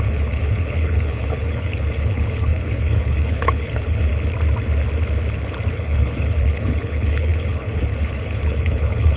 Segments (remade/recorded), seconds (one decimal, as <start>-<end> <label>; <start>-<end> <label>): 0.0-4.1 remade; 4.1-5.7 recorded; 5.7-9.2 remade